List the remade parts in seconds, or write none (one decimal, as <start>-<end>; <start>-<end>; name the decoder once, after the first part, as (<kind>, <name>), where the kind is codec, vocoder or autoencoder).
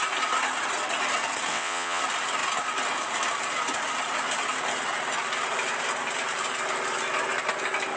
1.5-2.0 (vocoder, WaveNeXt)